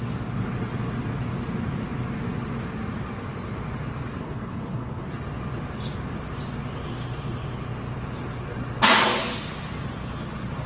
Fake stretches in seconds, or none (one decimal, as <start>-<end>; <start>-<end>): 4.2-5.1